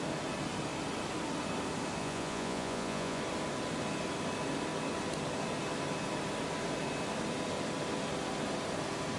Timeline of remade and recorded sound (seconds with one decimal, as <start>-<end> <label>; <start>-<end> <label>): 0.0-2.0 recorded; 2.0-3.2 remade; 3.2-9.2 recorded